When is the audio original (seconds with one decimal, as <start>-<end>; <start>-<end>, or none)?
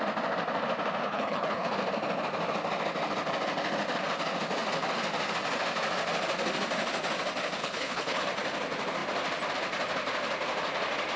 0.0-1.0; 1.7-7.6; 8.2-11.2